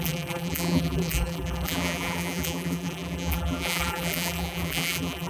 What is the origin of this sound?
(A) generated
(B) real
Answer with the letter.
A